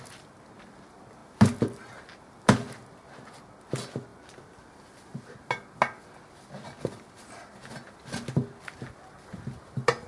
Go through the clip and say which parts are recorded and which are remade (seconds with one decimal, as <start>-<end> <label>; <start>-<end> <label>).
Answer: 0.0-10.1 recorded